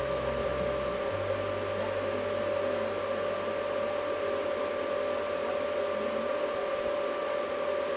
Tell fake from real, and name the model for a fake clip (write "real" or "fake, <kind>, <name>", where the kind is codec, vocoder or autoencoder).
real